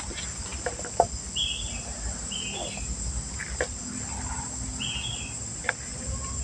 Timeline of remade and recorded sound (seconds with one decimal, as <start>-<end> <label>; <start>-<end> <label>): 0.0-6.4 recorded